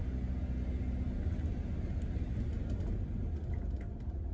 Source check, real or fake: real